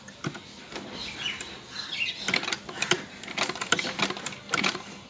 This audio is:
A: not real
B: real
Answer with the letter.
B